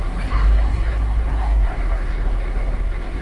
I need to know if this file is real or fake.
fake